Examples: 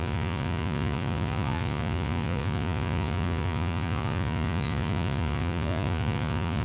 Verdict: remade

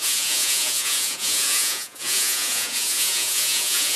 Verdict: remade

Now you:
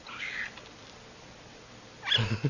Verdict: recorded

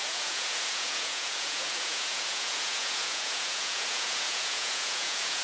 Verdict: remade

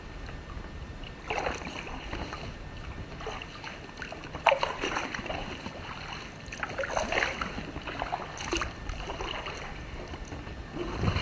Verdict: recorded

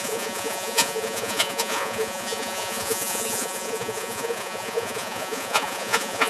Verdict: remade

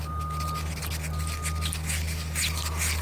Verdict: recorded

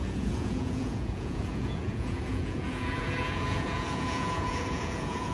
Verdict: remade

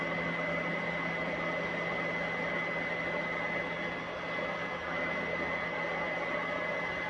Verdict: recorded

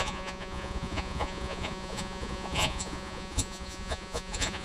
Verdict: remade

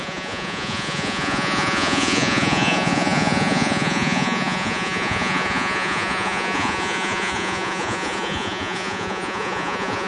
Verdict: remade